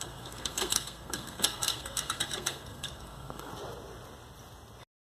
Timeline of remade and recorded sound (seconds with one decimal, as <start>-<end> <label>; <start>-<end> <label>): 0.0-3.5 remade; 3.5-5.1 recorded